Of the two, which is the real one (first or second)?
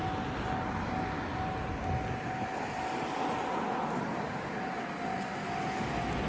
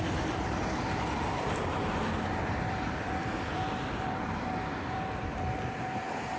first